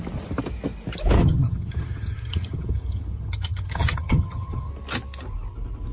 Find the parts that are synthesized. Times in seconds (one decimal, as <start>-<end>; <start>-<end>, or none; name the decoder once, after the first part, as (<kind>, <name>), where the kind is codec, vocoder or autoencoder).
1.2-4.7 (vocoder, HiFi-GAN)